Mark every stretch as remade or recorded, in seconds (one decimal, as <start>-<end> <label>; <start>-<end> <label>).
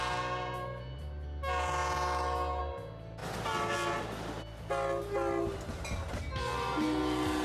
0.0-7.4 recorded